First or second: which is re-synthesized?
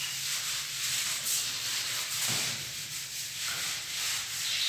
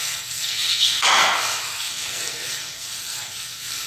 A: second